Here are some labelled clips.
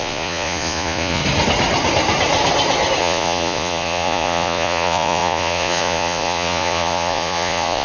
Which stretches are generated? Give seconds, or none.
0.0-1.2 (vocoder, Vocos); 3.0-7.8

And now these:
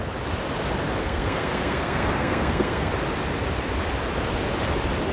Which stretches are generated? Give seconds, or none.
1.0-2.9 (codec, SNAC)

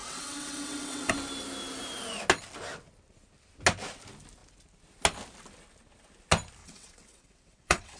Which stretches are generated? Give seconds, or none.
0.0-1.1 (vocoder, WaveNeXt); 6.6-8.0

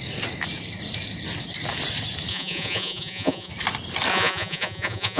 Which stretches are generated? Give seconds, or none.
2.3-3.5 (vocoder, Vocos); 4.1-5.2